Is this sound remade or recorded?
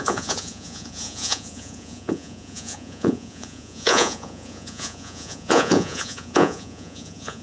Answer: remade